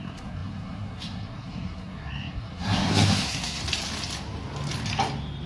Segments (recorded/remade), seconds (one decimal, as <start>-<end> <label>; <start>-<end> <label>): 0.0-3.6 remade; 3.6-5.5 recorded